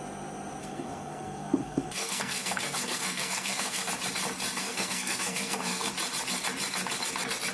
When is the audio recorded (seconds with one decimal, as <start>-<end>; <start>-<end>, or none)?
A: 0.0-0.6; 3.9-4.6; 5.9-7.5